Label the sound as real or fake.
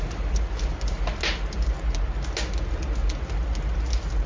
real